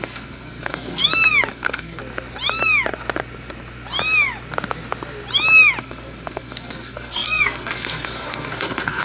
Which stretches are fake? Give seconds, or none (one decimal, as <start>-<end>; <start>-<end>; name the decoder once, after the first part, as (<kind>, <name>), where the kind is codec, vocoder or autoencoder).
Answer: 0.0-1.0 (codec, SNAC); 1.5-2.0; 5.8-9.0